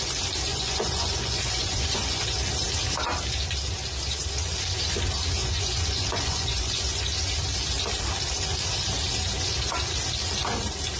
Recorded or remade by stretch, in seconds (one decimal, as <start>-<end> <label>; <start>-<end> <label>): 0.0-0.5 recorded; 0.5-2.2 remade; 2.2-5.4 recorded; 5.4-7.1 remade; 7.1-11.0 recorded

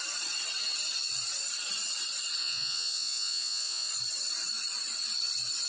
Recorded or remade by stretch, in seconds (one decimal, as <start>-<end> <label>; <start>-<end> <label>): 0.0-2.4 recorded; 2.4-3.9 remade; 3.9-5.7 recorded

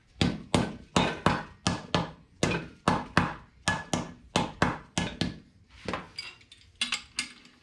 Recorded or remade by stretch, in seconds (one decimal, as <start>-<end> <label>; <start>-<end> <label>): 0.0-7.6 recorded

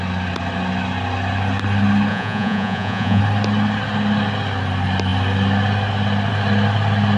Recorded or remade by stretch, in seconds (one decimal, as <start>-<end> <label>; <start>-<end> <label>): 0.0-2.1 recorded; 2.1-3.2 remade; 3.2-7.2 recorded